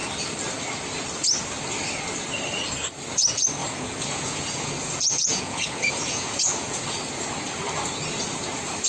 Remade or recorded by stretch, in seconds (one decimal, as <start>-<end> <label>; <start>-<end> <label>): 0.0-3.6 recorded; 3.6-6.8 remade; 6.8-8.9 recorded